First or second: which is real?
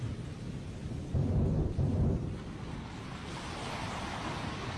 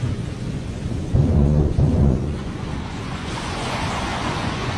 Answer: first